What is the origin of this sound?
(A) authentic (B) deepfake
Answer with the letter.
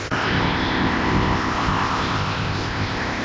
B